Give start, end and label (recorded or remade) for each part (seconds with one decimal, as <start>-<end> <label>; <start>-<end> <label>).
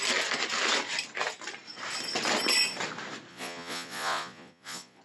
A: 0.0-3.3 recorded; 3.3-5.0 remade